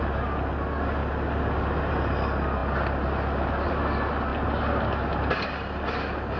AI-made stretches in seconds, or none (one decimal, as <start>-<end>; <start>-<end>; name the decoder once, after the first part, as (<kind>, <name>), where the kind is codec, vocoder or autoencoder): none